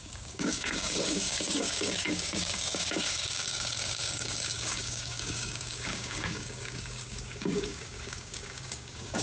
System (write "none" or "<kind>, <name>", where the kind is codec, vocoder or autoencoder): codec, DAC